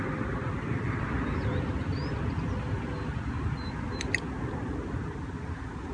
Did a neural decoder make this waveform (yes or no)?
no